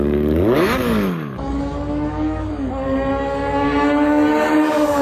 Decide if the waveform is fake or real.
fake